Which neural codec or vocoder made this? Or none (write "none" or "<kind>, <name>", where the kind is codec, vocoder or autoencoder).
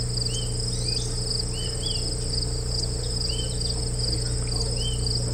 none